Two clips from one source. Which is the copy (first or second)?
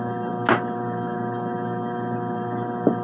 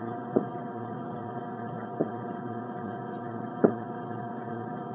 second